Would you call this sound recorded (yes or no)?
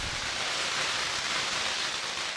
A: yes